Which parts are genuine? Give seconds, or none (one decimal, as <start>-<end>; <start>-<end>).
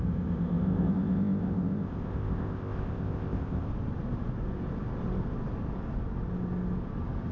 3.7-7.3